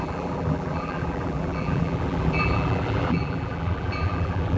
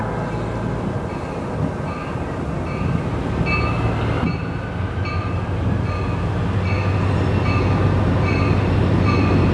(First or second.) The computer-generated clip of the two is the first